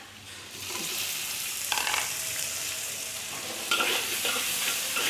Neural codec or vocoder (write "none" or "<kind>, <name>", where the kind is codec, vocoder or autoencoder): vocoder, BigVGAN v2